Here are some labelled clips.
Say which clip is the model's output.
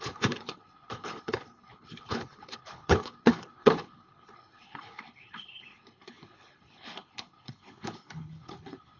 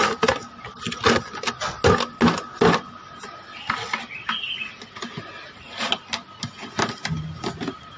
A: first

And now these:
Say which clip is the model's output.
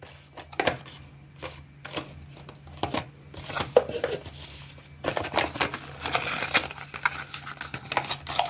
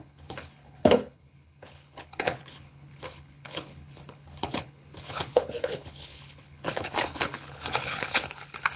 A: second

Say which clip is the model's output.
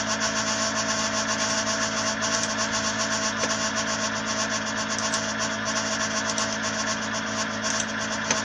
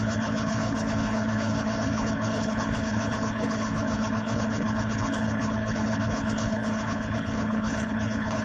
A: second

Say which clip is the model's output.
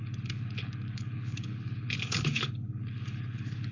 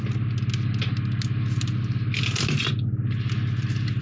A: first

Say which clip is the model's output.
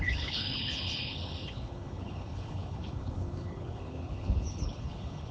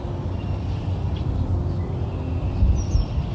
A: first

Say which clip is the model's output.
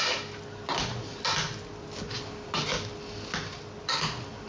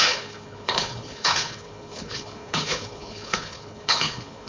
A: second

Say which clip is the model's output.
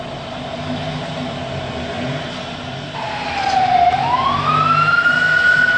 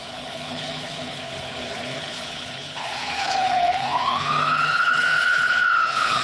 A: second